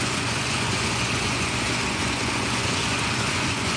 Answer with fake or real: fake